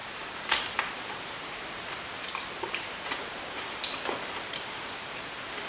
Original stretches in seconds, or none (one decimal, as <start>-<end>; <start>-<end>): 3.8-4.5